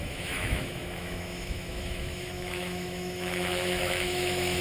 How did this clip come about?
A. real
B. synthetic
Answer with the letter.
B